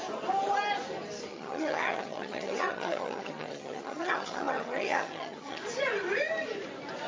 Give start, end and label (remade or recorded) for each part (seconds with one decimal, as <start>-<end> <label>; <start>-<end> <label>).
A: 0.0-1.3 recorded; 1.3-5.6 remade; 5.6-7.1 recorded